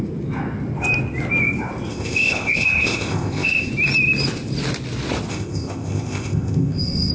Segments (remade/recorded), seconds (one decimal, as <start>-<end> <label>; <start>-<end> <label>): 0.0-1.9 recorded; 1.9-3.7 remade; 3.7-5.3 recorded; 5.3-7.1 remade